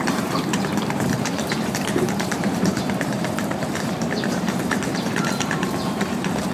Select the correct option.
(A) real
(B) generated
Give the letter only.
B